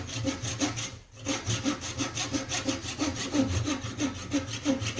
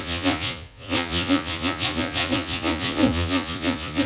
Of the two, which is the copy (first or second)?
second